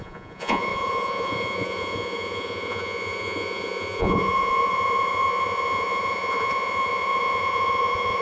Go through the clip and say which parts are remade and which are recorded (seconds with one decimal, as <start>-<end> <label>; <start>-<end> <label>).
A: 0.0-8.2 remade